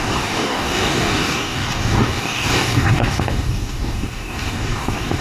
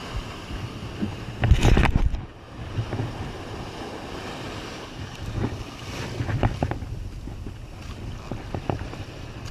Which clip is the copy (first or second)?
first